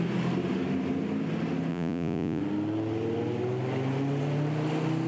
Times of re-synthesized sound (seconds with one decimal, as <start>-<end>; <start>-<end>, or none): 1.7-2.4